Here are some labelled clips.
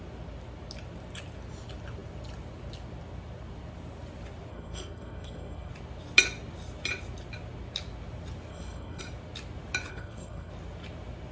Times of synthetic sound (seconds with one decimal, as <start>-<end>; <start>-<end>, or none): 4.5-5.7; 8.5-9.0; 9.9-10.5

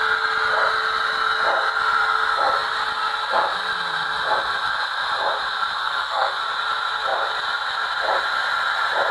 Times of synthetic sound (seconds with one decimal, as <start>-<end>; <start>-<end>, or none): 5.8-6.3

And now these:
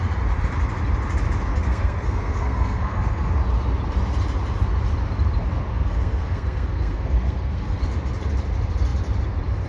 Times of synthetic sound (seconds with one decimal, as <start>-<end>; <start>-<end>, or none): 1.5-3.3; 5.7-7.8

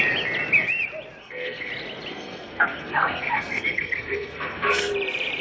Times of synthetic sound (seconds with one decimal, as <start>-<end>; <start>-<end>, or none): 1.2-1.7; 2.1-4.9

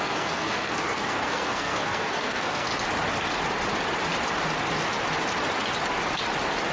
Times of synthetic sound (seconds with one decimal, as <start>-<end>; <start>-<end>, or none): 0.0-2.7

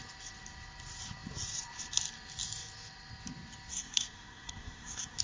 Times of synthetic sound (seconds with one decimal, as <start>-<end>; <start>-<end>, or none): 3.7-5.2